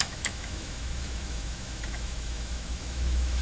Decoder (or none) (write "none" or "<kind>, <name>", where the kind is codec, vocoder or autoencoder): autoencoder, DAC-VAE